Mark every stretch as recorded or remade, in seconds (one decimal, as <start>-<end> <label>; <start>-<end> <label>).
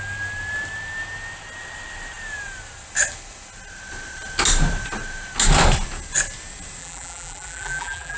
0.0-6.8 recorded; 6.8-8.2 remade